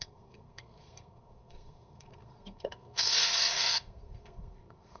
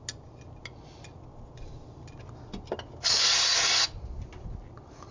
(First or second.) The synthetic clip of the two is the first